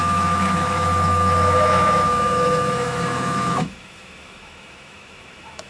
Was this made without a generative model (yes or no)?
no